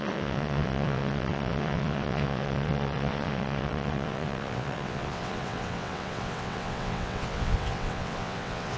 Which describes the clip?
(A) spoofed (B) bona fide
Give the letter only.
A